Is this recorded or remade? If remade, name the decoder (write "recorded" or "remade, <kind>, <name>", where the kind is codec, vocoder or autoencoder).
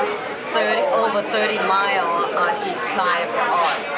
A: recorded